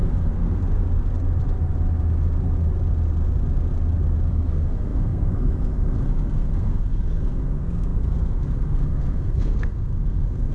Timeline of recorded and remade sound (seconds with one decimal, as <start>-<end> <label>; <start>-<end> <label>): 0.0-0.6 remade; 0.6-4.3 recorded; 4.3-10.5 remade